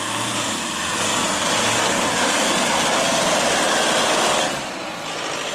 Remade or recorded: recorded